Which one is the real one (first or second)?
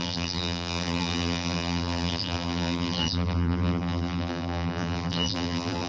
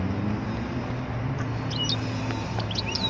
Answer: second